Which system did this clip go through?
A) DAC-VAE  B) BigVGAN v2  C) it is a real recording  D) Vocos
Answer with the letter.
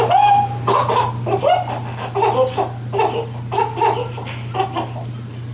C